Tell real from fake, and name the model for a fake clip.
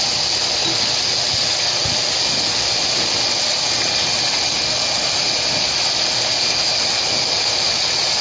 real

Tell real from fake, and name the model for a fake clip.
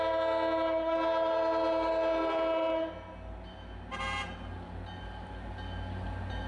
real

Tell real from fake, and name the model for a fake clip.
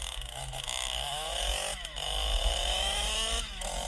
fake, autoencoder, DAC-VAE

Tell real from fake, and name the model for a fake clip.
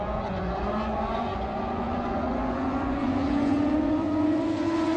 fake, vocoder, Vocos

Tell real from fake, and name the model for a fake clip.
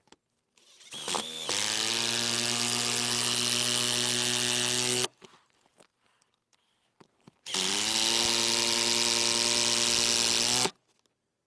real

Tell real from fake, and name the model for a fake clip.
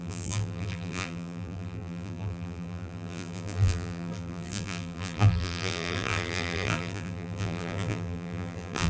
fake, vocoder, BigVGAN v2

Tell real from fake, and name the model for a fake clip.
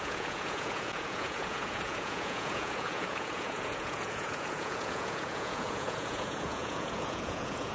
fake, vocoder, Vocos